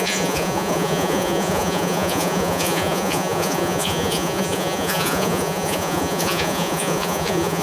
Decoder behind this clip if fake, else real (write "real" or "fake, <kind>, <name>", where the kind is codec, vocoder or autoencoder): fake, vocoder, Vocos